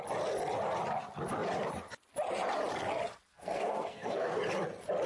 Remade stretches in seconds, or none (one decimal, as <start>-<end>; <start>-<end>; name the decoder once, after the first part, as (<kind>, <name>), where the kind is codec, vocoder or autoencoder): 3.3-4.4 (codec, SNAC)

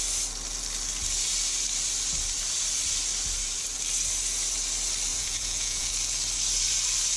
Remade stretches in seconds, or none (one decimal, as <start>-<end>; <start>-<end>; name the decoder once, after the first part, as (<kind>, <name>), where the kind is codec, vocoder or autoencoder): 5.1-5.9 (vocoder, Vocos)

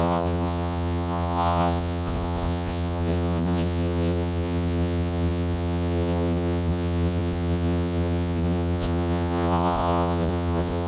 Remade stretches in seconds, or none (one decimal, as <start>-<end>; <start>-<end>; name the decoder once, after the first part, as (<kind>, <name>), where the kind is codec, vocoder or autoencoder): 0.0-10.9 (vocoder, Vocos)

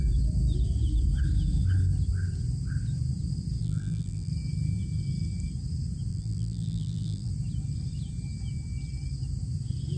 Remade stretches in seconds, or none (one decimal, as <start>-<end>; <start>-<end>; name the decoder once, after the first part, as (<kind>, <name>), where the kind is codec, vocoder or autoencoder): 3.6-4.3 (vocoder, BigVGAN v2); 6.1-7.3

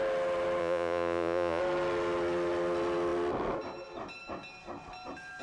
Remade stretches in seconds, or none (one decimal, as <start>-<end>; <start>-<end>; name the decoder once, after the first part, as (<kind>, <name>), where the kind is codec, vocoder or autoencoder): 0.6-1.6 (vocoder, Vocos)

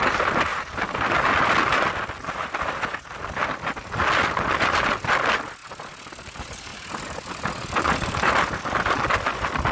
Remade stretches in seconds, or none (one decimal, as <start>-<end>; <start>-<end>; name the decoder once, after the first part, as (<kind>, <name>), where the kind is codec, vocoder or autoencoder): 6.7-9.7 (vocoder, BigVGAN v2)